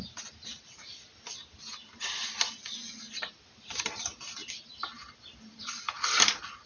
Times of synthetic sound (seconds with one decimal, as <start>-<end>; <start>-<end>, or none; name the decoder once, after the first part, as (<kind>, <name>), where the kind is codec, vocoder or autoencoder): none